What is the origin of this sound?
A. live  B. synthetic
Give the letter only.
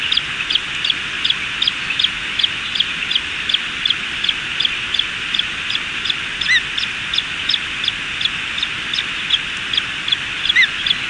A